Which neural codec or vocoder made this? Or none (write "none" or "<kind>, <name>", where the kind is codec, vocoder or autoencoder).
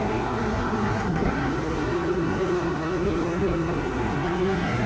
codec, SNAC